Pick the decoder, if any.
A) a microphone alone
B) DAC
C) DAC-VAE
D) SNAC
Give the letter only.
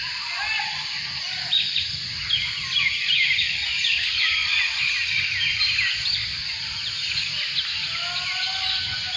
A